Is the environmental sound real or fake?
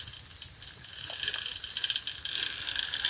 real